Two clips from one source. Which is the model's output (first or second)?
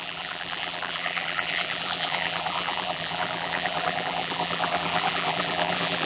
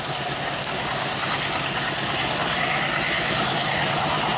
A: first